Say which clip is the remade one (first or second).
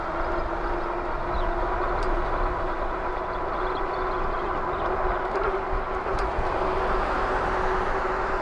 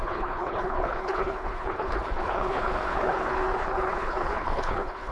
second